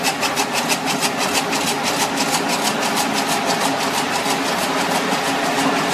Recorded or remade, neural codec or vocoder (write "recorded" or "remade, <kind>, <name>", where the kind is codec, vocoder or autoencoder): recorded